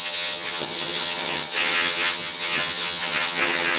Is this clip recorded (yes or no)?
no